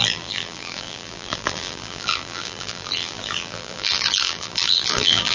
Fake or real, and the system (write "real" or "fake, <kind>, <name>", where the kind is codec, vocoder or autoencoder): fake, vocoder, BigVGAN v2